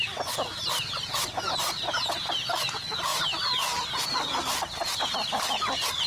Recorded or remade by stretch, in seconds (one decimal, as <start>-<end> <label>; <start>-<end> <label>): 0.0-6.1 recorded